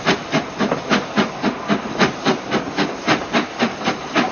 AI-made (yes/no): no